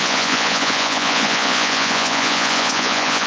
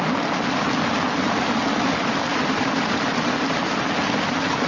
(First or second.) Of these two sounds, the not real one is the first